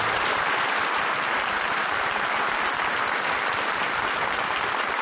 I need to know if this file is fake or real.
real